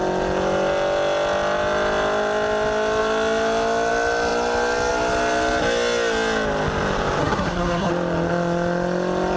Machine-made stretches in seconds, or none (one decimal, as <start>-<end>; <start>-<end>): 7.2-7.9